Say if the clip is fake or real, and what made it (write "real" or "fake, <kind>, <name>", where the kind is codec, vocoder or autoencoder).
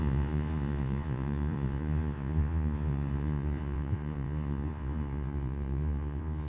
fake, vocoder, Vocos